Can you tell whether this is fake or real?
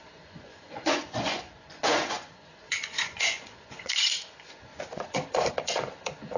fake